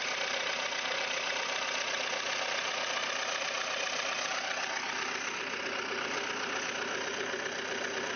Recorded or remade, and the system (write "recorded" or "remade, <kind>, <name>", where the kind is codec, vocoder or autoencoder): recorded